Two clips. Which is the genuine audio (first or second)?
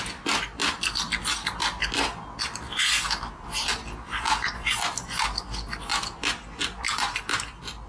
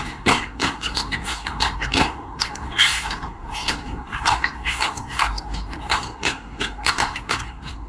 first